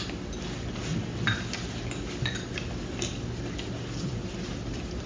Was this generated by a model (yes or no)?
no